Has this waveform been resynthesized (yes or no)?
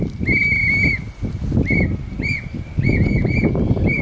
no